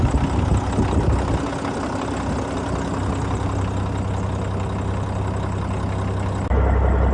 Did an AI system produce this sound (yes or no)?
no